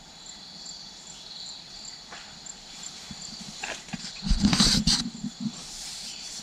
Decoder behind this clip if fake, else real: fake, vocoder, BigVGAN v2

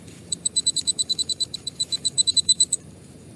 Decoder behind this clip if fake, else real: fake, vocoder, BigVGAN v2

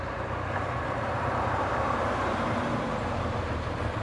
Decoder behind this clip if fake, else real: fake, vocoder, BigVGAN v2